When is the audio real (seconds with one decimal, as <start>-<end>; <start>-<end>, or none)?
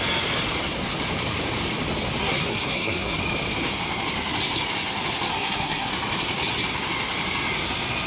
0.0-2.2; 3.2-5.3; 5.9-8.1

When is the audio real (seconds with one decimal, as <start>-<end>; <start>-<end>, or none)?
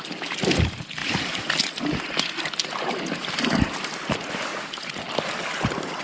0.0-4.5; 5.0-6.0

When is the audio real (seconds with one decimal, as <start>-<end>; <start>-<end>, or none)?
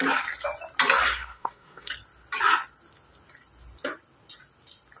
0.0-1.1; 1.9-5.0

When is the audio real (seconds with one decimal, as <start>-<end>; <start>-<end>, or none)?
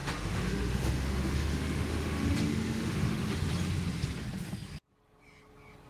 3.5-5.9